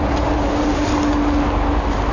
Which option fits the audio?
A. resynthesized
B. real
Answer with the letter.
B